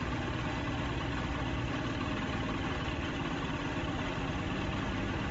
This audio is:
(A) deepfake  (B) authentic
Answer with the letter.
B